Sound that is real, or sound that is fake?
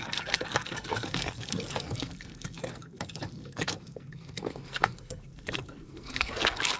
fake